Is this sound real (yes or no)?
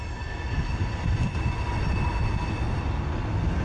yes